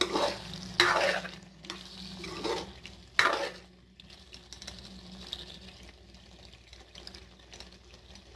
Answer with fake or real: real